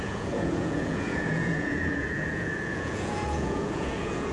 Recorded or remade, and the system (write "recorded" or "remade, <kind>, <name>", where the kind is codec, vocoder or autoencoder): remade, vocoder, Vocos